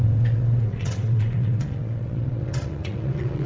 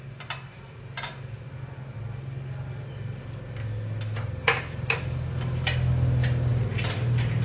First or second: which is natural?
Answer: second